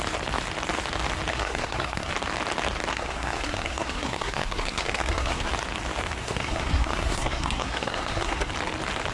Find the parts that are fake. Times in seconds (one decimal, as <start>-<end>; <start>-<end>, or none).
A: 1.3-2.1; 2.9-5.5; 6.2-8.5